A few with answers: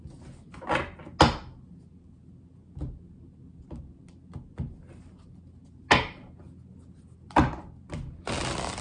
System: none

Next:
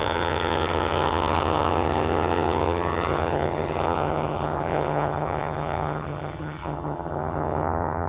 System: vocoder, HiFi-GAN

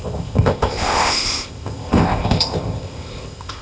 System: codec, ZipCodec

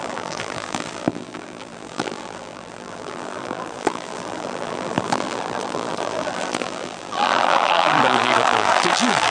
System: vocoder, BigVGAN v2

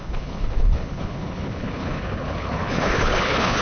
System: codec, HILCodec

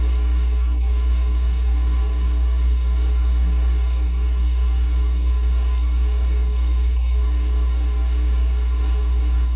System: codec, DAC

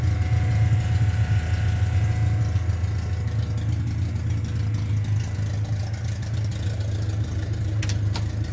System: none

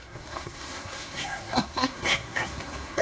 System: codec, SNAC